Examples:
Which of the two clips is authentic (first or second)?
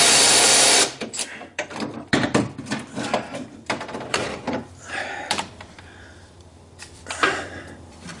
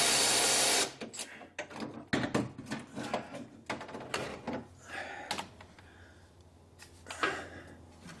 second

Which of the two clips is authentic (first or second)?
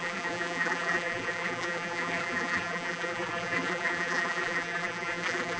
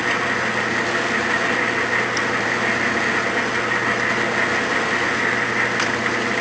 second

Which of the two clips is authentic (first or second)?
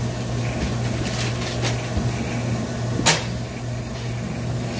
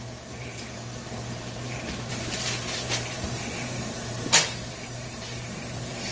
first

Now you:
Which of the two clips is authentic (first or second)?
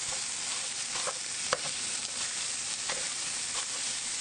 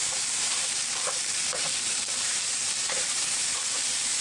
first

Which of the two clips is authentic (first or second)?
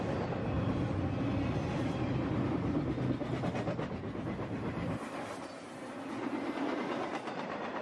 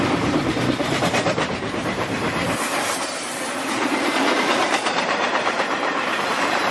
first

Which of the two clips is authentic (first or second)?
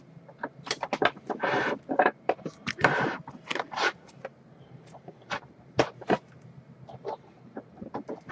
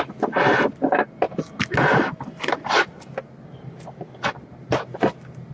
second